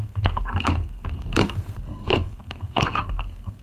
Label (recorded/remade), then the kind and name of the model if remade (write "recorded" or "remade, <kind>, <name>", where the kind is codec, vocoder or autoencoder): remade, codec, SNAC